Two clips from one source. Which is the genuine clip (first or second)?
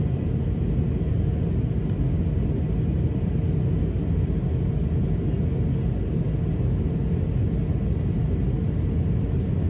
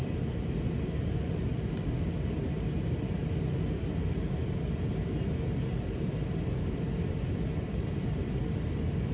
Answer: first